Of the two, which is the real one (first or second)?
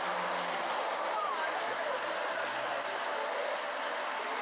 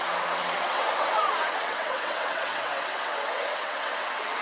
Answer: first